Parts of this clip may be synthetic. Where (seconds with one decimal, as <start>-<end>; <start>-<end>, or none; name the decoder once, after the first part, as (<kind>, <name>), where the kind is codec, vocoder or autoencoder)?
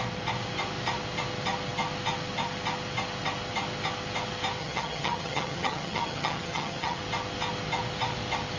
4.6-7.0 (vocoder, HiFi-GAN)